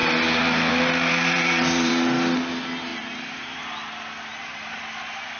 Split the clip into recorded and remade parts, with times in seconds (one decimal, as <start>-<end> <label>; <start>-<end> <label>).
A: 0.0-1.9 remade; 1.9-2.9 recorded; 2.9-3.6 remade; 3.6-4.3 recorded; 4.3-4.9 remade; 4.9-5.4 recorded